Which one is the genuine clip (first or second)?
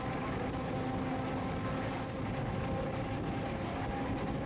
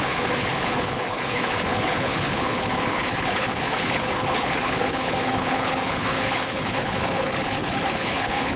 first